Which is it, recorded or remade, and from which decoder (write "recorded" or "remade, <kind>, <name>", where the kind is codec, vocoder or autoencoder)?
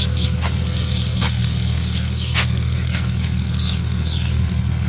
remade, codec, SNAC